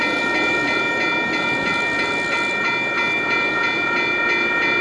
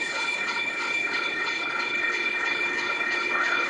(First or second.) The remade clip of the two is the second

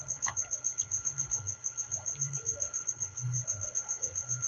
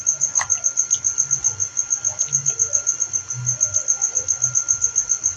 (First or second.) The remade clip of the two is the first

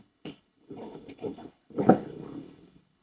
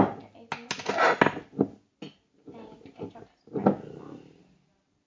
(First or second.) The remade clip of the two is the first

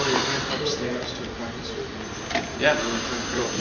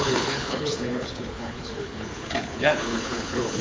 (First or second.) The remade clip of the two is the second